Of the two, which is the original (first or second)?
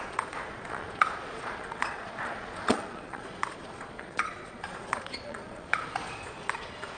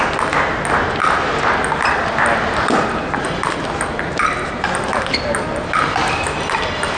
second